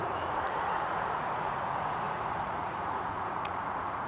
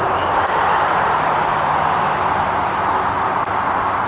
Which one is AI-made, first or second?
first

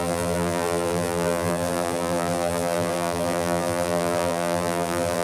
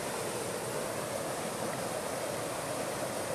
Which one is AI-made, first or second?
first